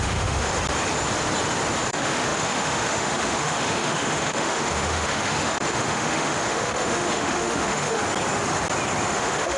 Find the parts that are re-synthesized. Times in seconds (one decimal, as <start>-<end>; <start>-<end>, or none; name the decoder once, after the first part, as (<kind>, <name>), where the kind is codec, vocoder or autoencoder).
0.0-0.5 (autoencoder, DAC-VAE); 1.9-8.0; 9.1-9.6